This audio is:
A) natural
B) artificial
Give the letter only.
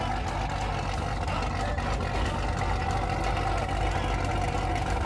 A